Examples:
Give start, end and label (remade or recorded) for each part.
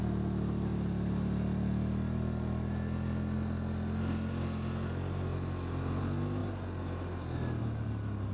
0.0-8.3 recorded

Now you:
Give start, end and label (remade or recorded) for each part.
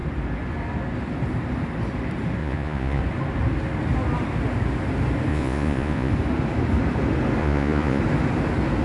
0.0-2.4 recorded; 2.4-3.0 remade; 3.0-5.3 recorded; 5.3-6.1 remade; 6.1-7.4 recorded; 7.4-8.0 remade; 8.0-8.8 recorded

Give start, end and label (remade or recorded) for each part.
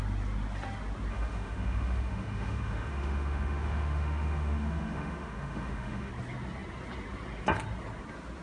0.0-1.1 recorded; 1.1-6.1 remade; 6.1-8.4 recorded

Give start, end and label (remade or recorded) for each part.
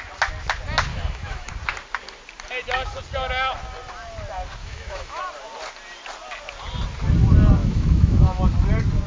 0.0-0.9 recorded; 0.9-1.5 remade; 1.5-4.6 recorded; 4.6-5.2 remade; 5.2-7.6 recorded; 7.6-8.4 remade; 8.4-9.1 recorded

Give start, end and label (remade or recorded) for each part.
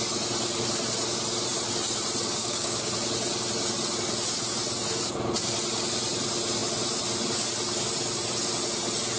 0.0-2.4 recorded; 2.4-2.9 remade; 2.9-9.2 recorded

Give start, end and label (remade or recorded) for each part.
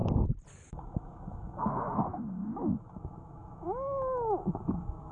0.0-0.7 recorded; 0.7-5.1 remade